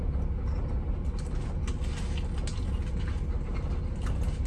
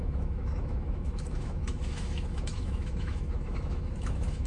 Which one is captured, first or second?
first